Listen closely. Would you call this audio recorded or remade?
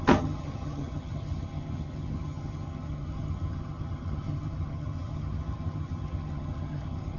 remade